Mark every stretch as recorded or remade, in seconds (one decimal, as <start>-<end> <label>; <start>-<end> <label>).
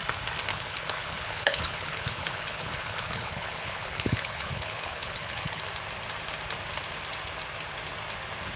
0.0-0.5 recorded; 0.5-5.6 remade; 5.6-8.6 recorded